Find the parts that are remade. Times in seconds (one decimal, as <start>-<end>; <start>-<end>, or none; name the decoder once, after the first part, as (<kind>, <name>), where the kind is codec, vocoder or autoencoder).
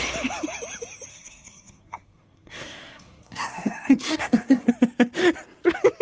1.1-4.7 (codec, SNAC)